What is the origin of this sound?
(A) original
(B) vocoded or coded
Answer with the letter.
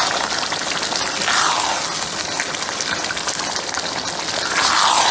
A